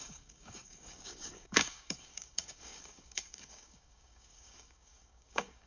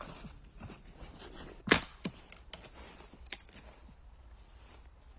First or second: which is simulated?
first